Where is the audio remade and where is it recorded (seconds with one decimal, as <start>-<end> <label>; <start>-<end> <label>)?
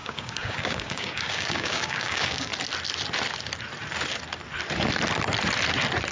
0.0-2.5 remade; 2.5-6.1 recorded